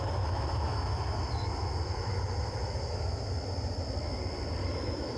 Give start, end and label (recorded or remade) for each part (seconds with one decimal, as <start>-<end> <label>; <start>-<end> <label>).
0.0-3.3 remade; 3.3-4.6 recorded; 4.6-5.2 remade